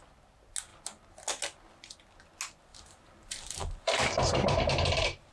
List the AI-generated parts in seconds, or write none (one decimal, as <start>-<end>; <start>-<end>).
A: 2.7-5.3